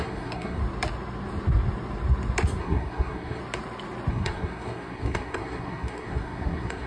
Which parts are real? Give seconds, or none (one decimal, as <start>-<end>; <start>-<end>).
0.6-2.6; 3.4-4.1